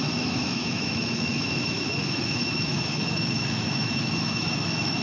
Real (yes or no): no